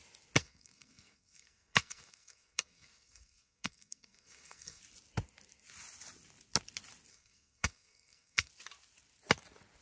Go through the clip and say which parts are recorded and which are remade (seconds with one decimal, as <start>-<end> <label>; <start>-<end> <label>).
0.0-0.4 recorded; 0.4-4.8 remade; 4.8-7.1 recorded; 7.1-8.5 remade; 8.5-9.8 recorded